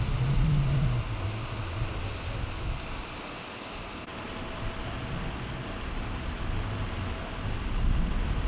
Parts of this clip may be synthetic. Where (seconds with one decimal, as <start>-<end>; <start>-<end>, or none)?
none